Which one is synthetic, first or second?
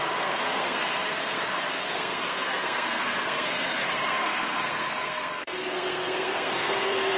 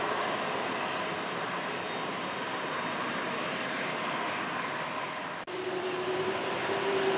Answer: first